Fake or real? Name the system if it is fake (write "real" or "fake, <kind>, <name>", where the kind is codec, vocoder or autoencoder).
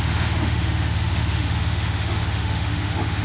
fake, autoencoder, DAC-VAE